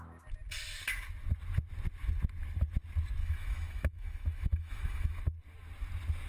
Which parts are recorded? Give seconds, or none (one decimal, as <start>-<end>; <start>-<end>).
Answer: 0.0-3.2; 5.2-6.3